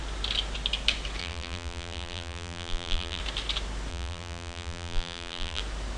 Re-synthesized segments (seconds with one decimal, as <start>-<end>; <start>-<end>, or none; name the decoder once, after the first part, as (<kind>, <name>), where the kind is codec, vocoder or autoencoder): 1.2-3.2 (vocoder, BigVGAN v2); 3.9-5.6

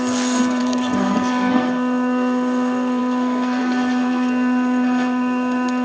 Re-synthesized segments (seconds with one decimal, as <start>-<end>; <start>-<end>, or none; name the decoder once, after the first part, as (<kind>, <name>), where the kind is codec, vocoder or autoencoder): 0.0-5.8 (codec, SNAC)